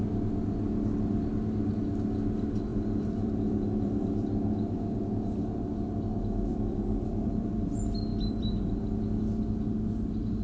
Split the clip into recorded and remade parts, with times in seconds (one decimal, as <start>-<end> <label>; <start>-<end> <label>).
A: 0.0-2.7 recorded; 2.7-5.0 remade; 5.0-6.5 recorded; 6.5-7.7 remade; 7.7-8.1 recorded; 8.1-8.7 remade; 8.7-10.4 recorded